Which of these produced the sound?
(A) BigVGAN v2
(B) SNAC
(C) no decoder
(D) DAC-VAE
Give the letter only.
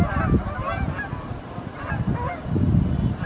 C